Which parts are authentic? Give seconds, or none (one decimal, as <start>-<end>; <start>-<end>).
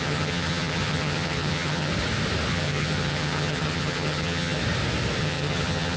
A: 1.9-2.5; 4.6-5.2